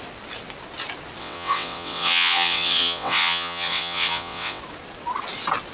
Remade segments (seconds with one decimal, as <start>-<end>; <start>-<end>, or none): 1.2-4.6